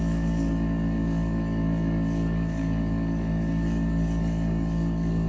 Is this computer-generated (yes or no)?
yes